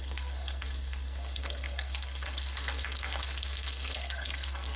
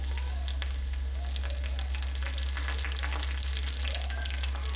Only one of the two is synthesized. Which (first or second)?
first